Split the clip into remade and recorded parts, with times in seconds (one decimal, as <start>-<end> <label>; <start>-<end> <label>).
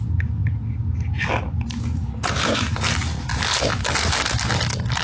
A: 0.0-5.0 recorded